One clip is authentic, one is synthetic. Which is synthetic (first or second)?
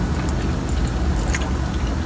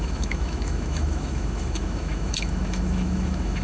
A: second